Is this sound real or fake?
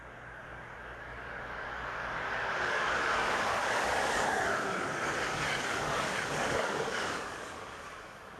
fake